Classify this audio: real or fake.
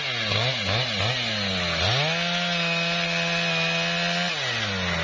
real